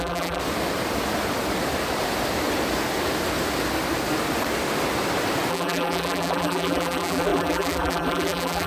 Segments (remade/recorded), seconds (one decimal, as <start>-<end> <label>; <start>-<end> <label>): 0.0-0.4 remade; 0.4-5.5 recorded; 5.5-8.7 remade